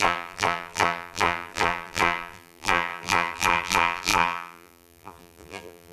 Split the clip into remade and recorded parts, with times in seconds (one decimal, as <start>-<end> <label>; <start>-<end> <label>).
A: 0.0-5.9 remade